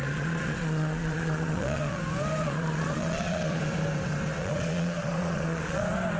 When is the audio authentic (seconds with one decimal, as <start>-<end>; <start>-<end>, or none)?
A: 2.0-2.4; 3.6-4.3; 5.8-6.2